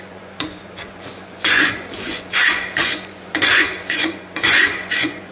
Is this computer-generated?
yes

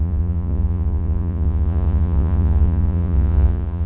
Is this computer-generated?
yes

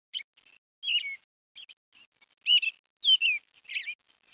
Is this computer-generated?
no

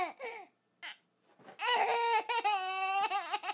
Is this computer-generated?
no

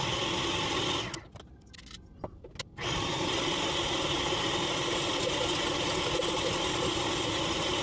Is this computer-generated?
no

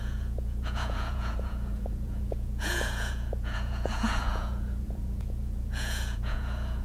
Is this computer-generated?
yes